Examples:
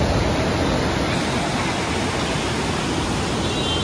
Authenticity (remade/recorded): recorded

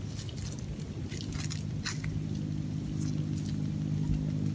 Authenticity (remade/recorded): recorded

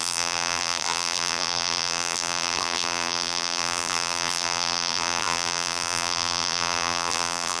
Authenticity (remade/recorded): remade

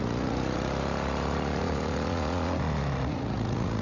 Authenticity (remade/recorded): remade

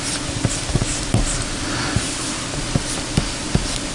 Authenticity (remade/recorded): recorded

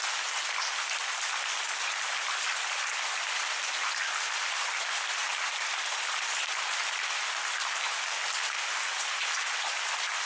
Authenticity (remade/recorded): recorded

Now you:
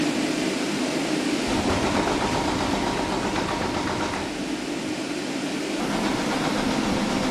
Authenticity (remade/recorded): recorded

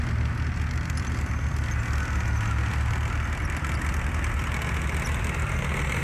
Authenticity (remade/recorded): recorded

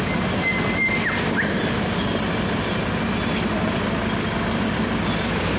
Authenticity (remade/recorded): recorded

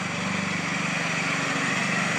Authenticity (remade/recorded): recorded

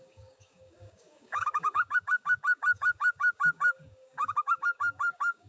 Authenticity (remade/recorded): remade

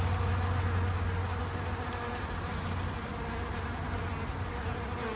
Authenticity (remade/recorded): recorded